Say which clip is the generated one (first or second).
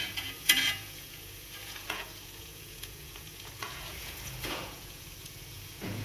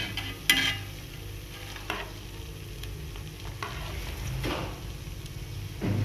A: first